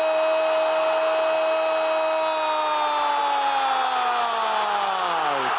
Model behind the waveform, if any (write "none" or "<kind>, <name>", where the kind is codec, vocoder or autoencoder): none